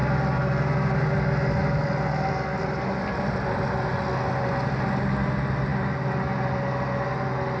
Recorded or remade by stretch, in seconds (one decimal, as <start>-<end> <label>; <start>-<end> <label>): 0.0-7.6 recorded

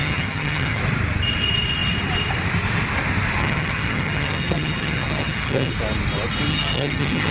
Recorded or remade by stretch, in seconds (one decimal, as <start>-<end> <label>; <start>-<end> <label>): 0.0-0.8 remade; 0.8-3.4 recorded; 3.4-5.7 remade; 5.7-6.5 recorded; 6.5-7.3 remade

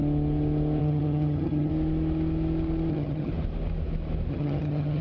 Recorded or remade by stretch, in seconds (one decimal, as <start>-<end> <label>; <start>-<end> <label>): 0.0-0.8 recorded; 0.8-1.7 remade; 1.7-2.9 recorded; 2.9-3.3 remade; 3.3-4.3 recorded; 4.3-5.0 remade

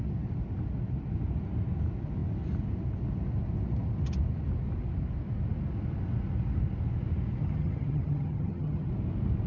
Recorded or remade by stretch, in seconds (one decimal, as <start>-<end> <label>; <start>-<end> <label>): 0.0-7.4 recorded; 7.4-8.9 remade; 8.9-9.5 recorded

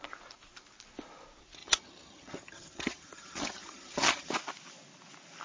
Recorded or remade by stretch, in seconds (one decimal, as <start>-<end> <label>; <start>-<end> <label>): 0.0-1.6 recorded; 1.6-4.3 remade; 4.3-5.4 recorded